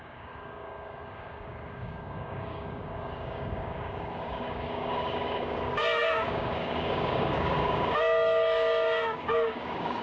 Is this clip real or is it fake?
fake